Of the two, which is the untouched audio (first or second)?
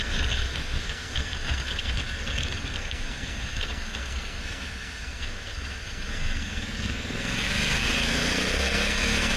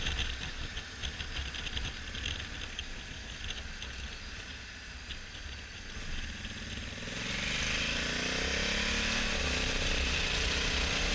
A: second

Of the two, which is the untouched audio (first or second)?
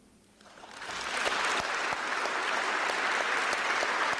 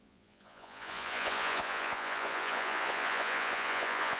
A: first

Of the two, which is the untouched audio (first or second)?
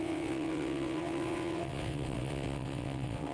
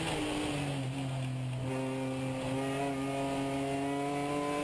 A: second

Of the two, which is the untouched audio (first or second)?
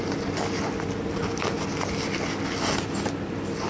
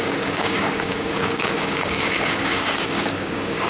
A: first